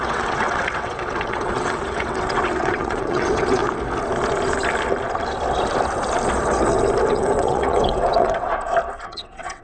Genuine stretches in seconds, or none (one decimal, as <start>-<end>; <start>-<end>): 3.6-7.1; 8.5-9.0